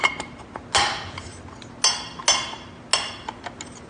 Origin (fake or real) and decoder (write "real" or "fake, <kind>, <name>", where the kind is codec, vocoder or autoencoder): real